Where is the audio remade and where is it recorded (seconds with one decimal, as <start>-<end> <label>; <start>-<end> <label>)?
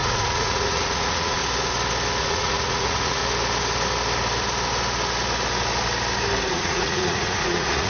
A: 0.0-1.4 remade; 1.4-2.2 recorded; 2.2-3.2 remade; 3.2-6.5 recorded; 6.5-7.9 remade